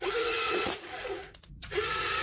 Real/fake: fake